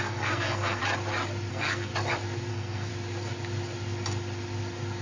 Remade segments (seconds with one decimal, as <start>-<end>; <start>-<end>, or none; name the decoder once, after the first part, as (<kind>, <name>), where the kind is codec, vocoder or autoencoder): 0.0-0.8 (codec, SNAC); 1.5-1.9; 2.5-2.9